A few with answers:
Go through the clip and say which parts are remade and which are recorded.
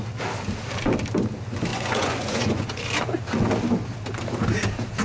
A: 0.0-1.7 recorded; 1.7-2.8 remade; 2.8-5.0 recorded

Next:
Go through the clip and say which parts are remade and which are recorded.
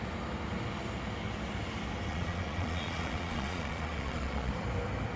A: 0.0-2.1 recorded; 2.1-4.5 remade; 4.5-5.2 recorded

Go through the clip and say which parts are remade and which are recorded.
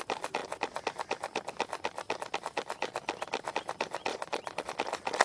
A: 0.0-4.1 recorded; 4.1-4.6 remade; 4.6-5.2 recorded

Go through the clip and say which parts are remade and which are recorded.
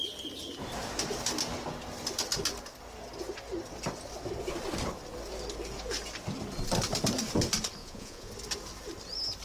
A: 0.0-7.8 recorded; 7.8-8.3 remade; 8.3-9.4 recorded